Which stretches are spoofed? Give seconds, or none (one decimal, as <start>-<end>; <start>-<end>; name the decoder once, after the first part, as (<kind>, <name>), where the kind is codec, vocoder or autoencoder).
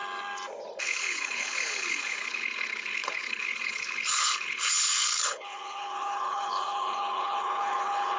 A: 0.8-8.2 (codec, HILCodec)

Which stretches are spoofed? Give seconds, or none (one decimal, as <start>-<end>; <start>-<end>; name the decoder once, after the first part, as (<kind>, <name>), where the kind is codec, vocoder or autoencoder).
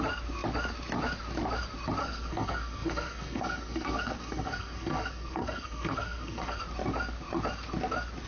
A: 2.0-6.6 (codec, SNAC)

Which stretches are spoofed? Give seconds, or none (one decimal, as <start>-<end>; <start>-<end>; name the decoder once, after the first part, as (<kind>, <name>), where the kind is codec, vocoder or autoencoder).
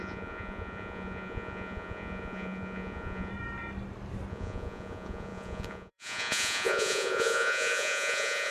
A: 0.0-3.3 (vocoder, Vocos); 4.3-8.5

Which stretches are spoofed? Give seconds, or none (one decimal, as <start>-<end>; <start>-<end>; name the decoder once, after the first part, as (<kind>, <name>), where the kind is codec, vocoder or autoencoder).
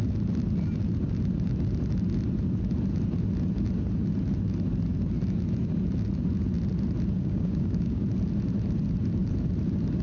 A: 7.2-8.0 (codec, DAC)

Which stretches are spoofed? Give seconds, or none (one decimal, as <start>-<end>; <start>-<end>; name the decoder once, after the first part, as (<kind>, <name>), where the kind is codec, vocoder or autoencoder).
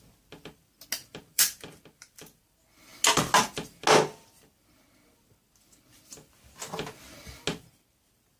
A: 1.0-2.5 (vocoder, BigVGAN v2)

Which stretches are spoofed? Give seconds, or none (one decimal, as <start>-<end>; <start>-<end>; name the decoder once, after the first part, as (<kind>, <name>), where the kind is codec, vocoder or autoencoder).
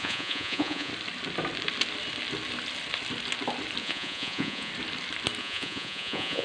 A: 0.0-0.9 (vocoder, Vocos); 3.8-4.7; 5.4-6.4